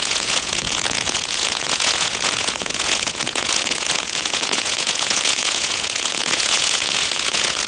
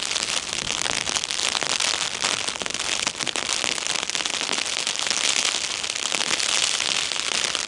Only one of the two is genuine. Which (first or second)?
second